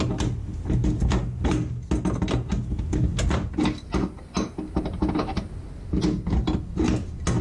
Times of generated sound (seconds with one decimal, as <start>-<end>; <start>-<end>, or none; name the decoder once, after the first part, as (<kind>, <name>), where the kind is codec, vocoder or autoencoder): none

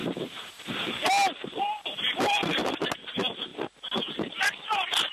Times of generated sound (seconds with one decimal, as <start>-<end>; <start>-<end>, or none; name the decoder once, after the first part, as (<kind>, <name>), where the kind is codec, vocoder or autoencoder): 0.0-0.9 (vocoder, BigVGAN v2)

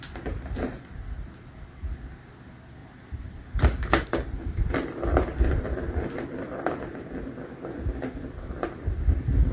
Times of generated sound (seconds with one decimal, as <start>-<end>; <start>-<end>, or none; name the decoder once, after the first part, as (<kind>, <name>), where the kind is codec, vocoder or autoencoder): 2.8-7.2 (vocoder, BigVGAN v2)

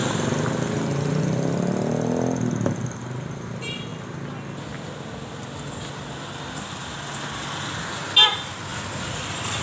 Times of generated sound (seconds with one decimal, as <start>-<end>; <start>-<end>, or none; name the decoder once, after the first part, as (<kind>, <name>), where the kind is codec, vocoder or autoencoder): 8.7-9.6 (vocoder, BigVGAN v2)

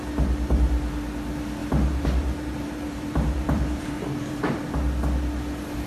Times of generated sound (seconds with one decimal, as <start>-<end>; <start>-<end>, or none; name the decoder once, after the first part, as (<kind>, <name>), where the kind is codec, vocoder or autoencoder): 1.6-4.7 (vocoder, BigVGAN v2)